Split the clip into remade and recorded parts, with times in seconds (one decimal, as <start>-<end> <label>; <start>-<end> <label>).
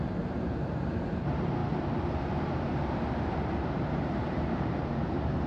0.0-5.5 remade